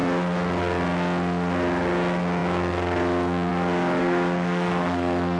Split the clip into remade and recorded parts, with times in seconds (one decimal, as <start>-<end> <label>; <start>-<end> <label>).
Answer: 0.0-4.0 recorded; 4.0-5.4 remade